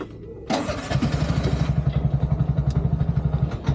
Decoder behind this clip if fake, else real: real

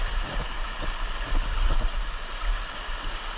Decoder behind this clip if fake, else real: real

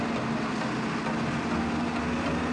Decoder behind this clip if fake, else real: real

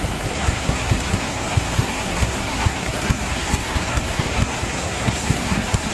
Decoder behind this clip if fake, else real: fake, codec, SNAC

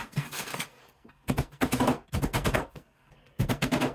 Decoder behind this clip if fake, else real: fake, codec, SNAC